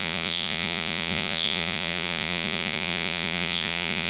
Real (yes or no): no